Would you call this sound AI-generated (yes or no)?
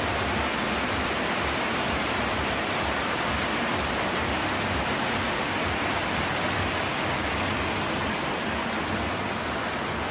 no